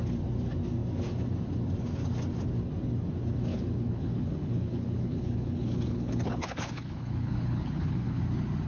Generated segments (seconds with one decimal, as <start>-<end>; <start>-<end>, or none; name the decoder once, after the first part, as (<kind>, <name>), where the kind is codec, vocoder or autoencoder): 3.5-8.2 (codec, HILCodec)

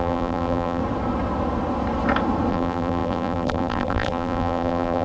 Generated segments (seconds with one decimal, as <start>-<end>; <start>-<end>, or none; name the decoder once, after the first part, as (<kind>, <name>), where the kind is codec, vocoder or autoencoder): 0.0-0.8 (vocoder, BigVGAN v2); 2.5-5.0

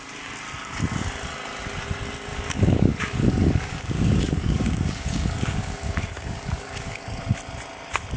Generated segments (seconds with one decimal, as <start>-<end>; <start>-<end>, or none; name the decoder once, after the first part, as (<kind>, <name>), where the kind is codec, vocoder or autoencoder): 2.3-7.2 (codec, DAC)

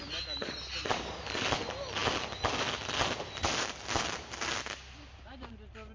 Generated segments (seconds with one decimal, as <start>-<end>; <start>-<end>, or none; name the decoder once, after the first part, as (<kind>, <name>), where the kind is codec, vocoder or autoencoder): none

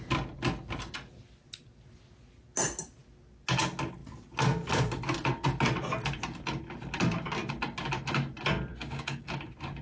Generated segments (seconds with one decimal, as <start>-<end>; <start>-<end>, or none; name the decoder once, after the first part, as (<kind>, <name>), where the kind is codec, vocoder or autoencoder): 8.7-9.3 (codec, DAC)